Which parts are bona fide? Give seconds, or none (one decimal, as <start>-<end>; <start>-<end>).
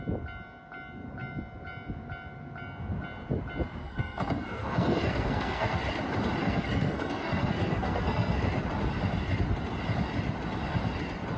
0.0-3.8; 5.8-6.4; 8.4-11.4